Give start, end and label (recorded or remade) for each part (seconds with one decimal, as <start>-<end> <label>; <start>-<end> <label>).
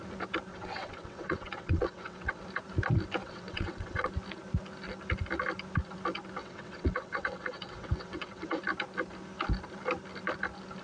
0.0-0.5 recorded; 0.5-2.4 remade; 2.4-3.2 recorded; 3.2-4.1 remade; 4.1-6.4 recorded; 6.4-8.6 remade; 8.6-10.8 recorded